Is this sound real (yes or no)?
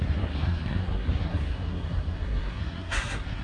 no